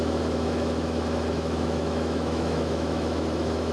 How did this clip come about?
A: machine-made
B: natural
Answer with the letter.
A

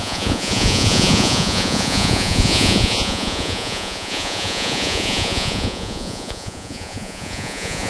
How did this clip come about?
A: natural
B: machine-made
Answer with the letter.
B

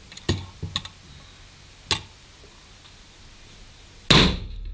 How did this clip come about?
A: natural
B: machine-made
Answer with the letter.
A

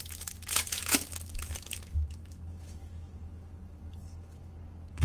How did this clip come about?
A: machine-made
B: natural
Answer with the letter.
A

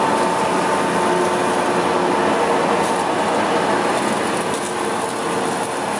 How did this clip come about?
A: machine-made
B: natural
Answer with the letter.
B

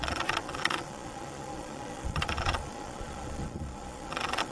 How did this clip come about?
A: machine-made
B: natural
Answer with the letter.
A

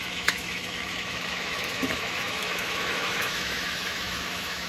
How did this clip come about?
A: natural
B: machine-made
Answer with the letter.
B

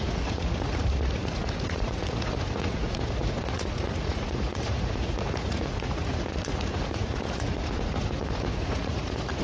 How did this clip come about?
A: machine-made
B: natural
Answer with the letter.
A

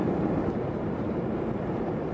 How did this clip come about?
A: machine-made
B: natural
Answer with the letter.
A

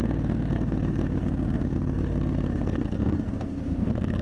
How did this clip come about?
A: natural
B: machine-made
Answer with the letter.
B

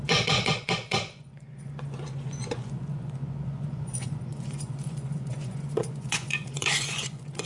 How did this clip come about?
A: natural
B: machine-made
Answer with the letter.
B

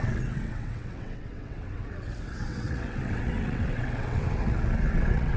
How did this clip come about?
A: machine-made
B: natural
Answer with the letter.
A